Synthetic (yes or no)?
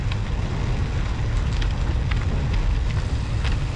yes